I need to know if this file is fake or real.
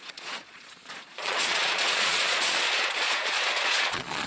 fake